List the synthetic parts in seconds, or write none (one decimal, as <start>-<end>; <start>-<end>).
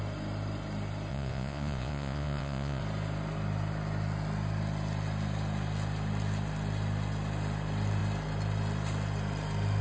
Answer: 1.1-2.8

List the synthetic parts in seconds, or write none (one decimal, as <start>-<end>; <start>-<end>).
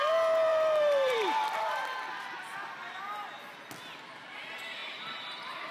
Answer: 0.5-2.4; 4.8-5.7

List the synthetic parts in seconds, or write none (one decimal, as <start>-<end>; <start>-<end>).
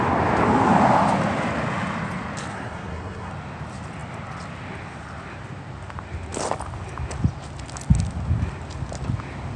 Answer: 2.5-3.3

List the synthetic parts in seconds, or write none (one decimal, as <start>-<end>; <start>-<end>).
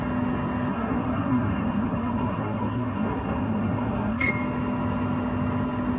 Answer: 0.7-4.3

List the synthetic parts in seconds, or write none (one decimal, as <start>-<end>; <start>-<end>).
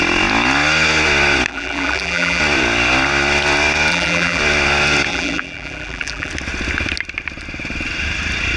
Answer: 1.5-2.4; 3.9-4.4; 5.1-6.3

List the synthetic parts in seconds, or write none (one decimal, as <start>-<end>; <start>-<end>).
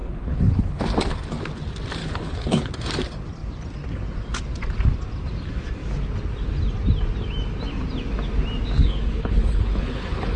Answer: 0.0-0.8; 2.0-2.7; 8.8-10.4